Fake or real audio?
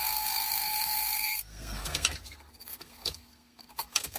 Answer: fake